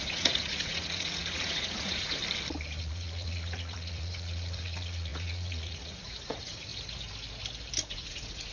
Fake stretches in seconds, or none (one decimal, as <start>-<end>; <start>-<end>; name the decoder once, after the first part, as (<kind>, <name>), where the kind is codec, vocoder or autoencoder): 0.0-2.2 (vocoder, Vocos); 2.8-6.7; 7.9-8.5